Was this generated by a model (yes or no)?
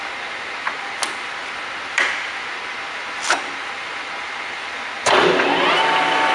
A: no